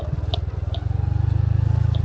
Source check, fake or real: real